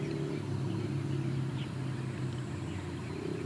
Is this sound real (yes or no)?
yes